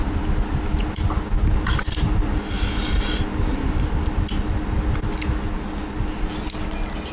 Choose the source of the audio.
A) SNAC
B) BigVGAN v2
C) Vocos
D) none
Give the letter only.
D